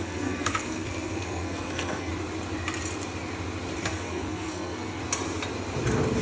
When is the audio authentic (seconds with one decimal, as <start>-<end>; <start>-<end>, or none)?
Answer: 2.1-3.8; 5.0-6.2